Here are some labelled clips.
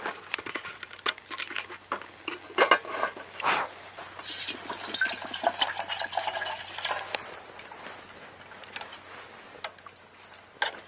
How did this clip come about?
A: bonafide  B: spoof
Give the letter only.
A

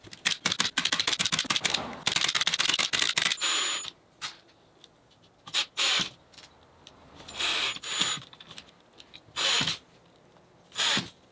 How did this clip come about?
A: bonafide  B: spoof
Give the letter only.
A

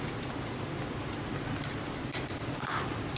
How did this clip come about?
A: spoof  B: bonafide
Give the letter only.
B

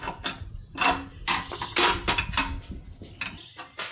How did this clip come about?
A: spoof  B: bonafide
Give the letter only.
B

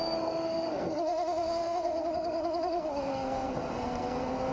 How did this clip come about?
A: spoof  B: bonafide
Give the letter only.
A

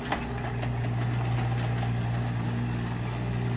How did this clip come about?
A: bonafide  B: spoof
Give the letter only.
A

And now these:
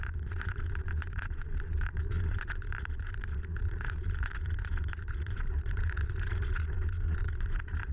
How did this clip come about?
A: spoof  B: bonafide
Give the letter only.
A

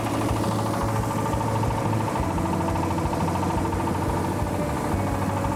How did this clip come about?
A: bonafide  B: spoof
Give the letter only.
A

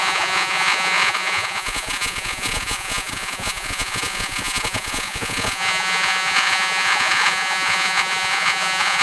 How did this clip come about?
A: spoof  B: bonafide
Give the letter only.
A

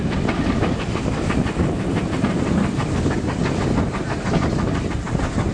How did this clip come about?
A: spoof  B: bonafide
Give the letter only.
B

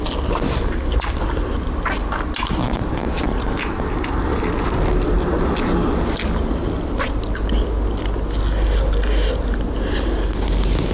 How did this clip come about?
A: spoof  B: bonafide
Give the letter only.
B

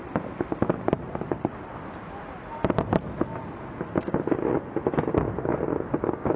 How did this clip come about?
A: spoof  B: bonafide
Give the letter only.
B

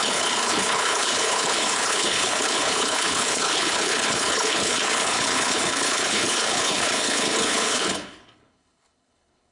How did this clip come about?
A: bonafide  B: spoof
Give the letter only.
B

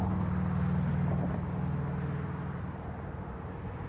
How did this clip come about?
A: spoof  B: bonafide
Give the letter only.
B